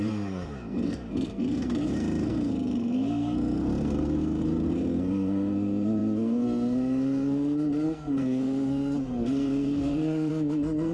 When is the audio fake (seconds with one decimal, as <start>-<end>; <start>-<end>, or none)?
0.0-10.9